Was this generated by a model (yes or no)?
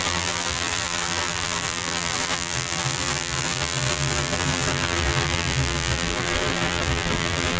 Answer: yes